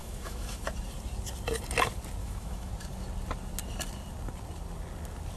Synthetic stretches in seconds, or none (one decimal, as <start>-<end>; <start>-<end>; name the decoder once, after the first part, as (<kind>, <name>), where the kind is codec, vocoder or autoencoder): 0.0-0.6 (autoencoder, DAC-VAE); 2.2-2.7